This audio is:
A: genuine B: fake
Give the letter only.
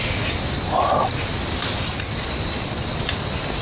A